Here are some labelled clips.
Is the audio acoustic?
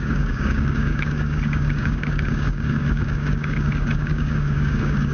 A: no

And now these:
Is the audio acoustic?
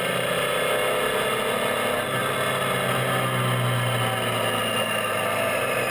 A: yes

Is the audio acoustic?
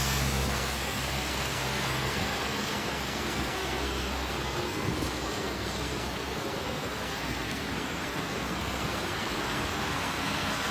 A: no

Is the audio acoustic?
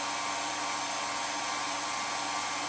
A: yes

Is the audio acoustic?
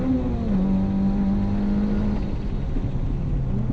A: yes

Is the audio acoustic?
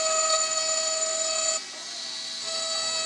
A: yes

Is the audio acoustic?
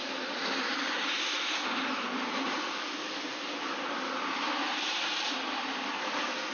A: yes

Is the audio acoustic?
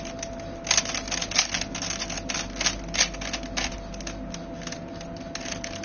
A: yes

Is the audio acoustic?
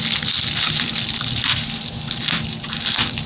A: yes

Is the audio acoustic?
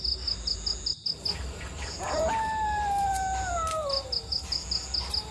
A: yes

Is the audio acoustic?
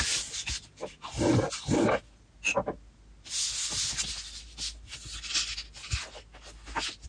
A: yes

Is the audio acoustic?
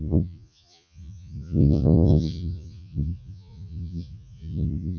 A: no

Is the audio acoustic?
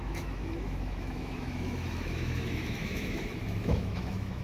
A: no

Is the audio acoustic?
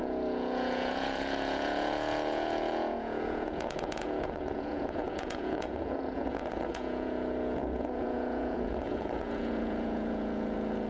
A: no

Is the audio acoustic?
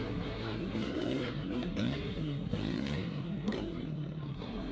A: no